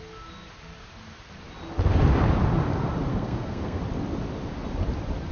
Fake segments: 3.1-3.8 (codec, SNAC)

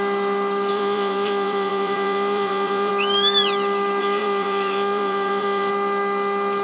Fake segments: 0.7-2.9 (vocoder, Vocos); 4.0-5.7

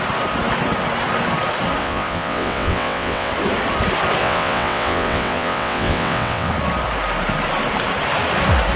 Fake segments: 1.8-3.3 (vocoder, WaveNeXt); 4.2-6.5

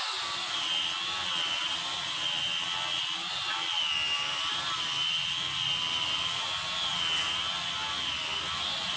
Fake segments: none

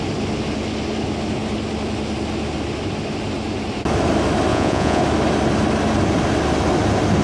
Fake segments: 4.5-5.0 (vocoder, Vocos)

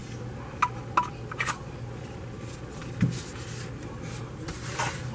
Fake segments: none

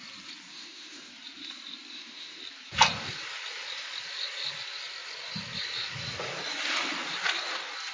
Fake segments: 0.5-1.1 (autoencoder, DAC-VAE); 1.9-2.4

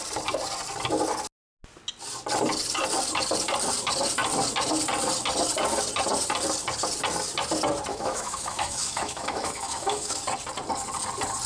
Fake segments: 7.9-10.2 (autoencoder, DAC-VAE)